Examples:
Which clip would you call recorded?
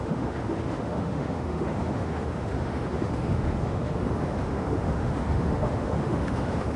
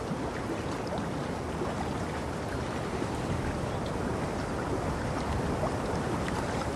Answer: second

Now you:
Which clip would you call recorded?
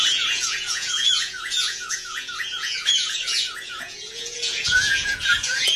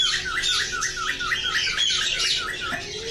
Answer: second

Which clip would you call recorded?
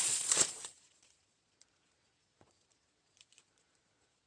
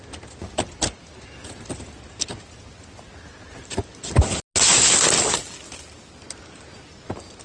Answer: second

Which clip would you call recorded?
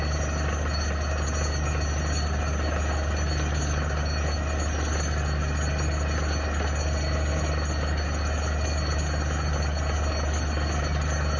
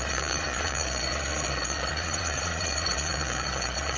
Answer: first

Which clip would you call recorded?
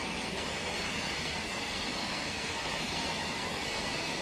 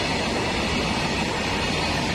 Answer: second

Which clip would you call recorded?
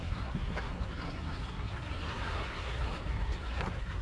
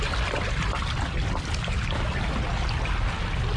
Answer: second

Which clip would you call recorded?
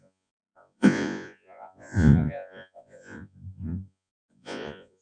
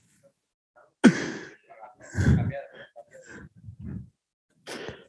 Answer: second